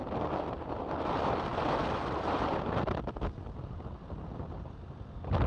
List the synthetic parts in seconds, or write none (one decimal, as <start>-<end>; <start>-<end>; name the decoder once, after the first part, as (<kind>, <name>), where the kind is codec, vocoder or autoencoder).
none